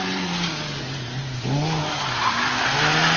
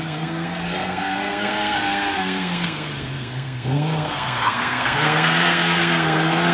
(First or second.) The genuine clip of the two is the first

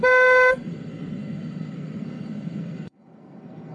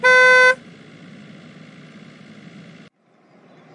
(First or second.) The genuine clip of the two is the second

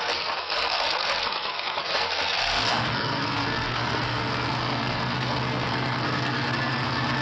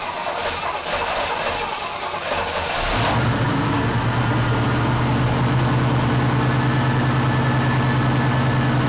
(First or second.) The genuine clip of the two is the second